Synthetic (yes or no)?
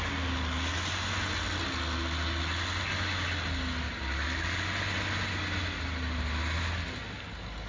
no